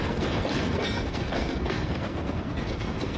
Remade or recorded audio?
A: remade